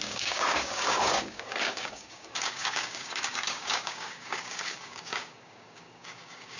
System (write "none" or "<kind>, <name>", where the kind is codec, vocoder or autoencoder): codec, DAC